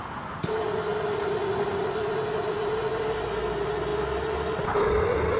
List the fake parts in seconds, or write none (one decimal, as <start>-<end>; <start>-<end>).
none